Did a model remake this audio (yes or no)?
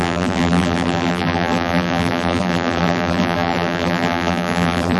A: yes